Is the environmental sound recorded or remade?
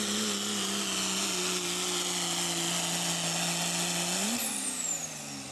recorded